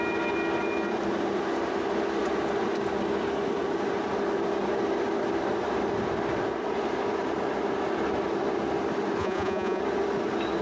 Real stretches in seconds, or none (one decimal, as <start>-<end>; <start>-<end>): 0.0-9.2; 9.8-10.6